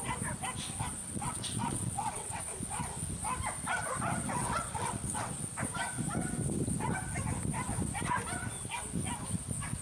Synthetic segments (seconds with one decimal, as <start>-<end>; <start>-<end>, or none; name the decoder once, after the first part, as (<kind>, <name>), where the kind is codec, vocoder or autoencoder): 1.0-2.4 (vocoder, WaveNeXt); 4.4-5.3